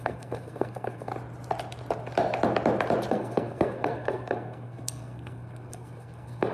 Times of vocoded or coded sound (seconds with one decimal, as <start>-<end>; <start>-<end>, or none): 0.0-1.1; 3.1-6.5